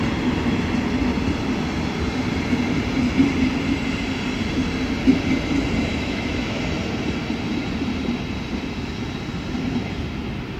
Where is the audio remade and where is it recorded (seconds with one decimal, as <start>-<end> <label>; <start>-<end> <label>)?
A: 0.0-5.9 recorded; 5.9-6.6 remade; 6.6-10.6 recorded

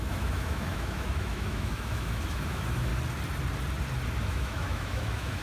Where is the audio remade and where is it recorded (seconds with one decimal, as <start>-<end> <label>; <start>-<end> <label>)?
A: 0.0-2.9 remade; 2.9-4.2 recorded; 4.2-5.4 remade

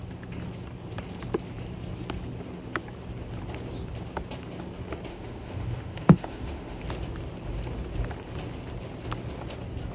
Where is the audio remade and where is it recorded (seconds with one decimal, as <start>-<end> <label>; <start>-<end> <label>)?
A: 0.0-5.1 recorded; 5.1-6.8 remade; 6.8-9.9 recorded

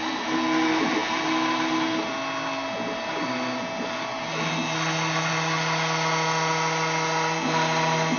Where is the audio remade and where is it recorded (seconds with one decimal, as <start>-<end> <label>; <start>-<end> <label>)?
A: 0.0-8.2 recorded

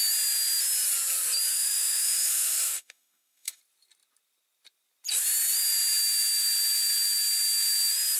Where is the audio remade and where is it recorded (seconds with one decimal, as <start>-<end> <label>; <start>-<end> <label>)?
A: 0.0-1.5 recorded; 1.5-3.6 remade; 3.6-8.2 recorded

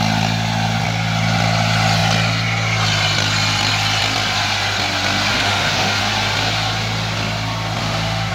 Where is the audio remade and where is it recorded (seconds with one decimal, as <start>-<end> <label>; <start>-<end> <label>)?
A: 0.0-5.3 recorded; 5.3-6.0 remade; 6.0-7.8 recorded; 7.8-8.3 remade